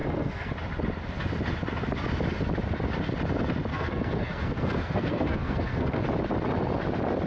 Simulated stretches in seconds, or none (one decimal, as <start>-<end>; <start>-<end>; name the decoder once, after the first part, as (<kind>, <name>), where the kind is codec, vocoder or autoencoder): 0.0-0.5 (codec, SNAC); 3.7-6.0